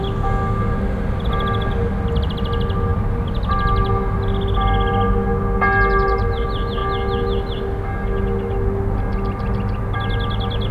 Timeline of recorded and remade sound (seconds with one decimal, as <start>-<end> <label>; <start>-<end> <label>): 0.0-10.7 recorded